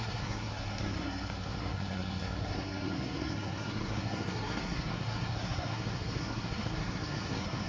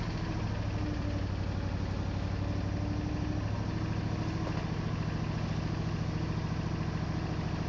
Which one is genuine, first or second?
second